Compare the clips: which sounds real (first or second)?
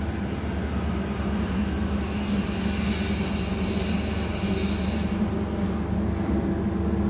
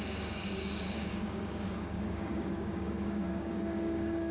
first